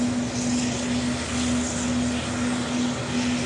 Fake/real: real